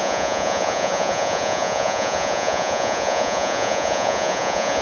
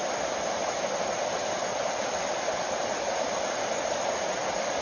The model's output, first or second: first